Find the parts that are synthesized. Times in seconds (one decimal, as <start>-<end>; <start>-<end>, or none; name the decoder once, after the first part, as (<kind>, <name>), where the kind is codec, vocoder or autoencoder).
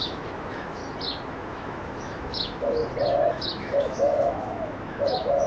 0.0-0.8 (autoencoder, DAC-VAE); 1.3-2.8; 3.3-5.5